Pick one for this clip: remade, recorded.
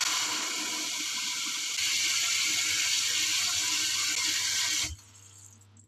recorded